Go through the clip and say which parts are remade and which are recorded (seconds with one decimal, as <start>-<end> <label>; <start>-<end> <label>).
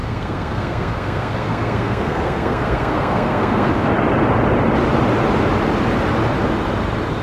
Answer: 0.0-3.7 remade; 3.7-7.2 recorded